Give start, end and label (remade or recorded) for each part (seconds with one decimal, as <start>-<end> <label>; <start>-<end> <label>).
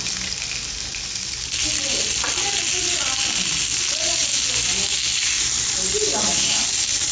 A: 0.0-7.1 recorded